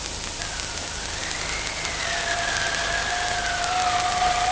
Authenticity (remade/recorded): recorded